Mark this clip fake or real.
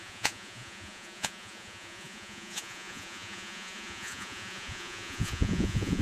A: fake